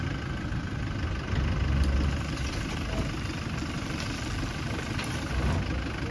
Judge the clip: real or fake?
real